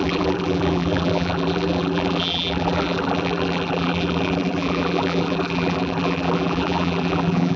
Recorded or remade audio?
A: remade